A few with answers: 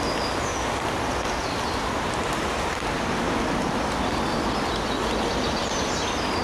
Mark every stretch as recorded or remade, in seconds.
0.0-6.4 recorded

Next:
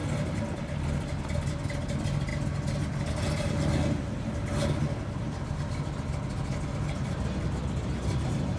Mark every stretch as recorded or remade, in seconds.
0.0-8.6 recorded

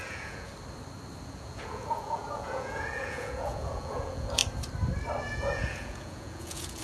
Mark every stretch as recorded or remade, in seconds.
0.0-0.5 remade; 0.5-1.3 recorded; 1.3-4.4 remade; 4.4-5.2 recorded; 5.2-6.8 remade